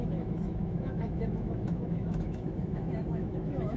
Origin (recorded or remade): remade